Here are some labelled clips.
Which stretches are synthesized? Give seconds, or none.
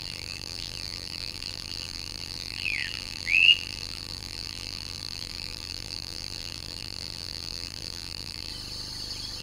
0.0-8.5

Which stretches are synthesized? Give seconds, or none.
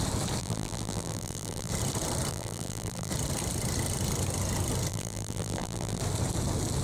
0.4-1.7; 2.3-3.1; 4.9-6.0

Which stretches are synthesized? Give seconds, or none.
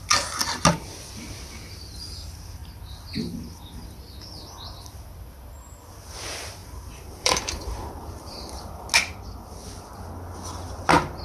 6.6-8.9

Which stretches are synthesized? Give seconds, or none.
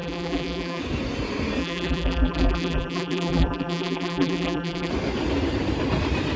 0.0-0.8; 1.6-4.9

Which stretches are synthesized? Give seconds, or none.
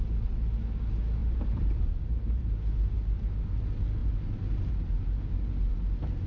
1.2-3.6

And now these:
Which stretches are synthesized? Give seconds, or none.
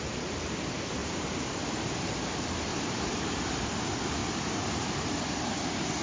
1.0-1.6; 2.7-3.6; 4.2-5.2